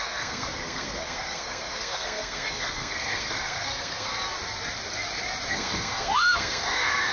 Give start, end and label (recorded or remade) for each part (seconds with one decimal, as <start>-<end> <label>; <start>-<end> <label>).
0.0-4.1 remade; 4.1-5.5 recorded; 5.5-7.1 remade